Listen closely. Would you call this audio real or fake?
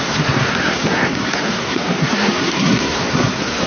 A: fake